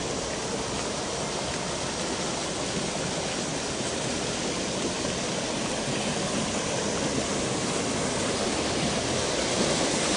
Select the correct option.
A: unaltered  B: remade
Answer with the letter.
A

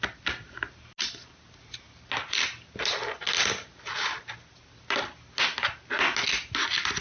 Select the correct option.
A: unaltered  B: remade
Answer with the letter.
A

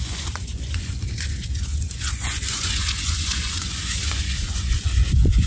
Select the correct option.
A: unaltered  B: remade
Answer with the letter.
B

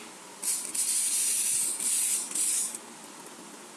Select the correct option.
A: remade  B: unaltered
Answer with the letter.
B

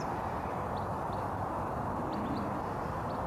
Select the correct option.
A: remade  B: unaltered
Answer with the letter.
B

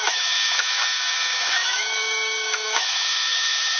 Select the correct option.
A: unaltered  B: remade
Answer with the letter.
B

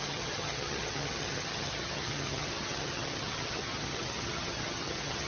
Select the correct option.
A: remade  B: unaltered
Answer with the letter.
A